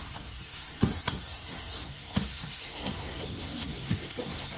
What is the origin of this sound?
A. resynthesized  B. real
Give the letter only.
A